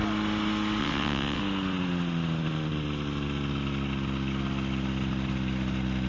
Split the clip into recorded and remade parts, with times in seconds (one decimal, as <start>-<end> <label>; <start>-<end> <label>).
0.0-0.8 recorded; 0.8-1.4 remade; 1.4-6.1 recorded